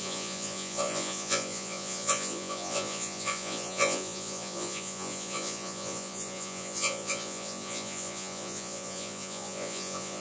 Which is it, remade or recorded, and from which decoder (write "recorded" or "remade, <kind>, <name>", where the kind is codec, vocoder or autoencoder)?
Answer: remade, vocoder, Vocos